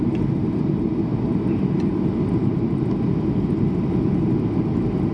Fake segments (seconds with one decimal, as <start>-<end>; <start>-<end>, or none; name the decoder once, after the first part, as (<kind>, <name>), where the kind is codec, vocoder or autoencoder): none